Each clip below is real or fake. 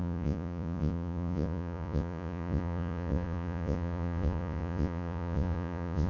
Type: fake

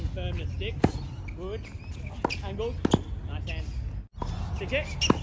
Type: real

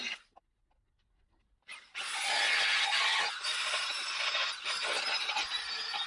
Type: real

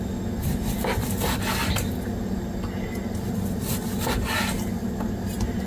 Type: real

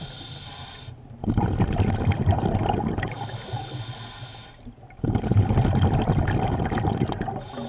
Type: real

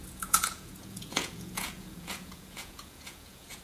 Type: fake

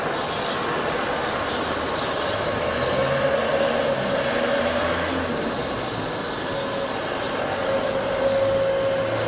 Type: real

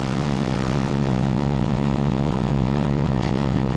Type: fake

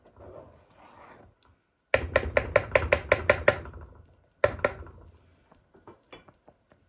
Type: real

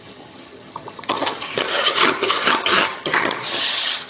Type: fake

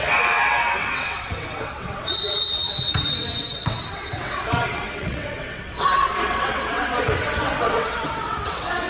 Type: fake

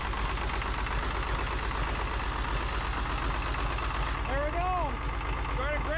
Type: real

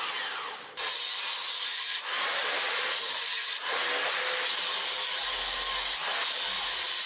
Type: real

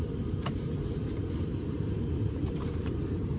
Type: fake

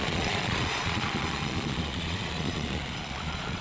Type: fake